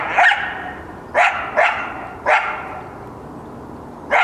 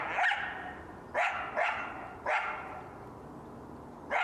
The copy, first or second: first